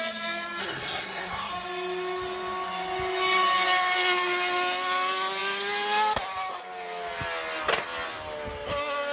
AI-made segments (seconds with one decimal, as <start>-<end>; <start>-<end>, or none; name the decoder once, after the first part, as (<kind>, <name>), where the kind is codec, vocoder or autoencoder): 0.6-1.5 (codec, SNAC)